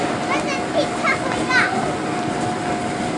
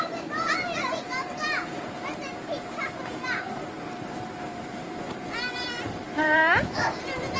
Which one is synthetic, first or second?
second